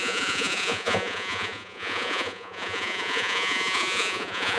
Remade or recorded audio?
remade